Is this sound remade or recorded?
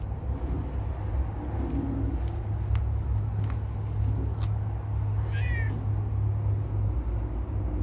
recorded